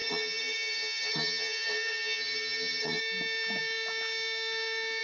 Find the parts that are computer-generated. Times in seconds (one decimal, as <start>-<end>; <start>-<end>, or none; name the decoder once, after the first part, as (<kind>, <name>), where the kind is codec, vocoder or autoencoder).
0.0-3.0 (vocoder, HiFi-GAN)